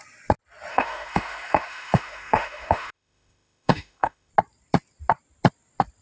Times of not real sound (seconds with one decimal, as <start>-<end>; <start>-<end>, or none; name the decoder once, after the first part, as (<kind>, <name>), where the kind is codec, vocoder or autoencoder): 0.7-4.3 (autoencoder, DAC-VAE)

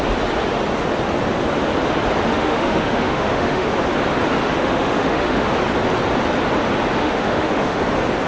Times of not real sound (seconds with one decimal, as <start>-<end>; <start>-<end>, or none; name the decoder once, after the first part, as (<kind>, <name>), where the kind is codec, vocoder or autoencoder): 2.3-3.7 (autoencoder, DAC-VAE); 4.6-5.5; 7.0-7.8

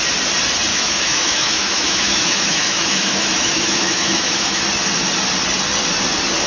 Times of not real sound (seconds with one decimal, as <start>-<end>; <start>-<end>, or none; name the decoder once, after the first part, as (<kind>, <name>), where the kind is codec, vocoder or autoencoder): 0.7-4.6 (autoencoder, DAC-VAE)

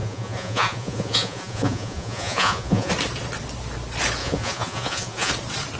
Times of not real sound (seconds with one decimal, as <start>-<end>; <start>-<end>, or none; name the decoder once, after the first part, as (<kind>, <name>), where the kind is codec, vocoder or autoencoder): 0.0-2.9 (vocoder, Vocos); 4.2-5.3

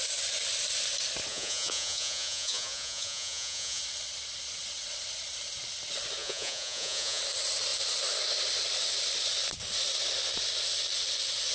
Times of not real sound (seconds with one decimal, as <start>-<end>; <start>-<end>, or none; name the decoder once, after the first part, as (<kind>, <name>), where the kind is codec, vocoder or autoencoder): 1.3-3.8 (vocoder, Vocos); 6.2-7.2

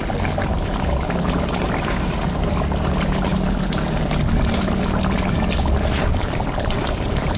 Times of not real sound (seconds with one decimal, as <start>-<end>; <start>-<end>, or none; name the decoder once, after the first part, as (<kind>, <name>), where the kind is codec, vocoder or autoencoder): 0.5-2.9 (vocoder, BigVGAN v2); 6.1-7.4

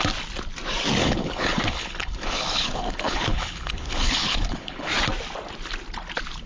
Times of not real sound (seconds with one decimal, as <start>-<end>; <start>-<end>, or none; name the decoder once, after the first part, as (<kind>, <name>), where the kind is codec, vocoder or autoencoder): 1.0-4.9 (codec, HILCodec)